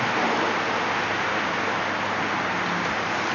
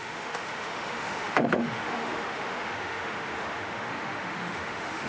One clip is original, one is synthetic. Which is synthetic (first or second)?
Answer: second